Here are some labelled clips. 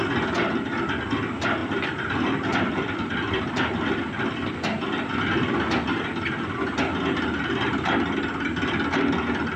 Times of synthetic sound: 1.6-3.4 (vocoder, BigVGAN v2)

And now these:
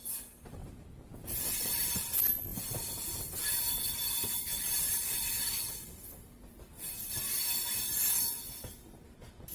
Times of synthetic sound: 0.6-1.9 (vocoder, BigVGAN v2)

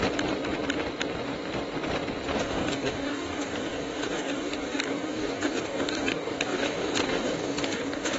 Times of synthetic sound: 2.4-8.2 (codec, DAC)

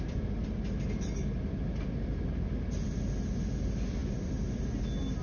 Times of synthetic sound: none

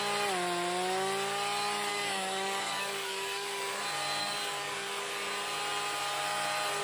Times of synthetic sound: 1.9-3.8 (codec, DAC); 4.2-5.1

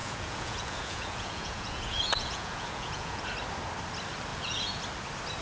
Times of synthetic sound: 0.0-3.2 (vocoder, Vocos); 4.3-4.8

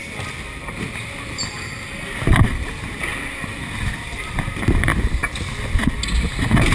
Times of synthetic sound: 3.1-4.4 (vocoder, BigVGAN v2)

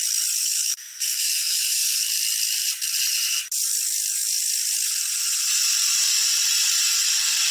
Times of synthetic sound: 0.4-2.0 (codec, SNAC)